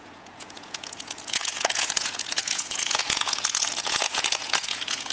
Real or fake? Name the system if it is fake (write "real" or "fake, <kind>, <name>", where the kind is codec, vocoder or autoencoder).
fake, vocoder, Vocos